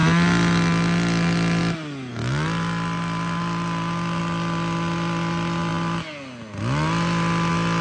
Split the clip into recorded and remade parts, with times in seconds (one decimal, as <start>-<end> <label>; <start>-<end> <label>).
0.0-7.8 recorded

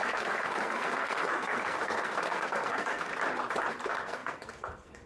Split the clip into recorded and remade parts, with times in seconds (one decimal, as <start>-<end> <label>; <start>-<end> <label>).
0.0-3.1 remade; 3.1-3.7 recorded; 3.7-5.1 remade

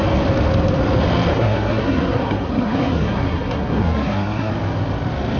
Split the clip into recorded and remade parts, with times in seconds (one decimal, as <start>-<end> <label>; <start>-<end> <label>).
0.0-1.3 recorded; 1.3-4.5 remade; 4.5-5.4 recorded

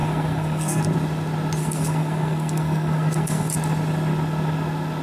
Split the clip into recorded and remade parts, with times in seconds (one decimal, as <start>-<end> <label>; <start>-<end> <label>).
0.0-0.8 remade; 0.8-1.6 recorded; 1.6-3.5 remade; 3.5-5.0 recorded

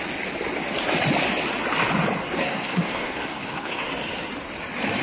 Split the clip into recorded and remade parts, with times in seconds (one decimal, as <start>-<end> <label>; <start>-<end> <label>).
0.0-2.4 recorded; 2.4-3.9 remade; 3.9-5.0 recorded

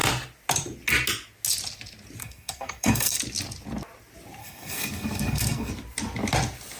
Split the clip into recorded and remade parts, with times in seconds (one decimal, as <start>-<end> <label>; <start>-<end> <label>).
0.0-2.2 recorded; 2.2-3.2 remade; 3.2-4.4 recorded; 4.4-5.7 remade; 5.7-6.8 recorded

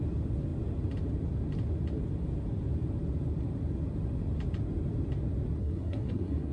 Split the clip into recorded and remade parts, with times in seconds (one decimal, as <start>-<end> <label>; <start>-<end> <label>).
0.0-5.6 recorded; 5.6-6.5 remade

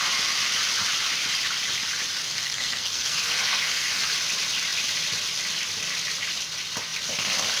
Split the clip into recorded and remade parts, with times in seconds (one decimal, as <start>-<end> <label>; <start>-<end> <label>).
0.0-2.2 recorded; 2.2-4.1 remade; 4.1-7.6 recorded